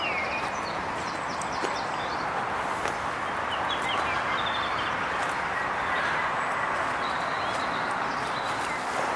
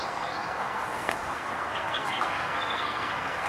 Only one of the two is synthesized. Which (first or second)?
second